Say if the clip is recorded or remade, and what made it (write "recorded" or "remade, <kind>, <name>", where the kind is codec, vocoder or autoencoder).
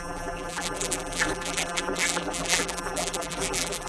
remade, vocoder, BigVGAN v2